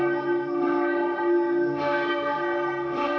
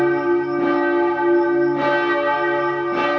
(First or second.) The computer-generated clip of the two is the first